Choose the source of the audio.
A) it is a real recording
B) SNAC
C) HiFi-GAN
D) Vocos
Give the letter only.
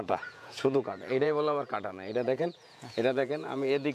D